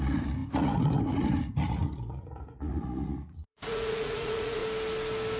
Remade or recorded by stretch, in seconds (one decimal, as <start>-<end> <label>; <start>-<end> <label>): 0.0-4.6 remade; 4.6-5.4 recorded